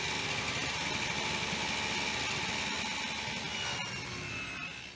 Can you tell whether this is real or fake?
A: real